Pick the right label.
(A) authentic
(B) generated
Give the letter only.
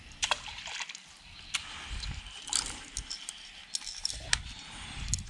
A